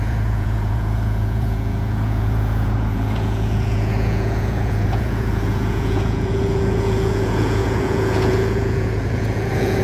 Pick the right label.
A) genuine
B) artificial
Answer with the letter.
B